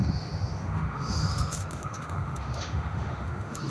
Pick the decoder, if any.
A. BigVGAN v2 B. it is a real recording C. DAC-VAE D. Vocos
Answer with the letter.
C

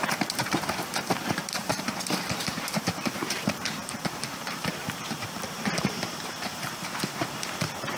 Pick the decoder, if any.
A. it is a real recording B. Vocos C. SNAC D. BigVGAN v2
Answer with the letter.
D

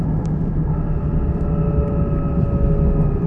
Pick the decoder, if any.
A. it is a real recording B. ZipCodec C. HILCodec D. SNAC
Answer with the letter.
A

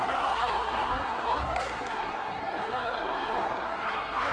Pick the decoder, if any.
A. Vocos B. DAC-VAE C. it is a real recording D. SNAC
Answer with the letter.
D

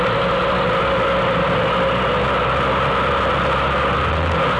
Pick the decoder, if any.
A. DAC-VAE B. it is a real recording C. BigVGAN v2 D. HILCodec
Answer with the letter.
B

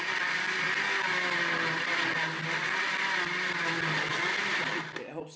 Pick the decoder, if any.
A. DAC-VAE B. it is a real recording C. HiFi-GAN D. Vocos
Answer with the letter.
B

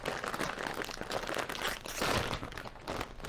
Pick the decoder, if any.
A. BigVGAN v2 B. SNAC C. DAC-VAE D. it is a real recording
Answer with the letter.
D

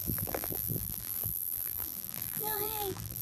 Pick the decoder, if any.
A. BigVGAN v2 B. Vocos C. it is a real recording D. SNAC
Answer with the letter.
A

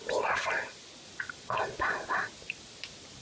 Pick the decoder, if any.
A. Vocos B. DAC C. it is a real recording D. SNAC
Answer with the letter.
C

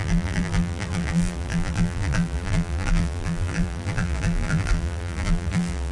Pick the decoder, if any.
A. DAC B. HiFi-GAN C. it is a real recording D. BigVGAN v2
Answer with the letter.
D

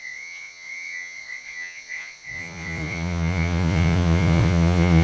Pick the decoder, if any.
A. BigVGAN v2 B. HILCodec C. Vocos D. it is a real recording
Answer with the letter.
C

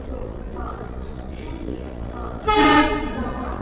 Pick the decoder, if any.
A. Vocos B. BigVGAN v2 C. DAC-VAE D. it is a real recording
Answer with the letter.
A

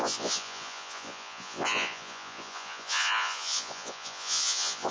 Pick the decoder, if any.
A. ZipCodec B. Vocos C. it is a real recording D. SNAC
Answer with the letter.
B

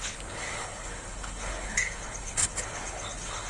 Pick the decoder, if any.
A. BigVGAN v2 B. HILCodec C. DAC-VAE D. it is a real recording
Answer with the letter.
B